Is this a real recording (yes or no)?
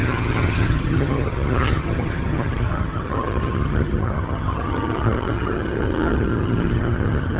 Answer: no